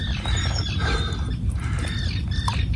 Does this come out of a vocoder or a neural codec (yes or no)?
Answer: no